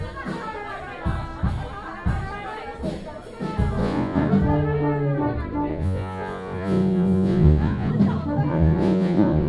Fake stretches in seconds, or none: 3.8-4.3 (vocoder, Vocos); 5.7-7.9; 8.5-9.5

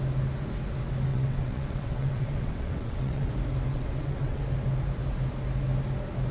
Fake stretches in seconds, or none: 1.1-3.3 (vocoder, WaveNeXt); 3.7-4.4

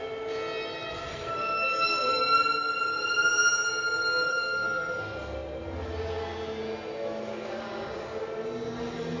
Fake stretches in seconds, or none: 1.1-2.1 (codec, SNAC); 4.3-5.0